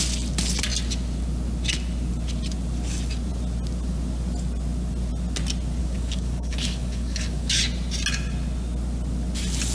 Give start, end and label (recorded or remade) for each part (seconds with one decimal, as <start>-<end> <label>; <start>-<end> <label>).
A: 0.0-5.8 recorded; 5.8-7.6 remade; 7.6-9.7 recorded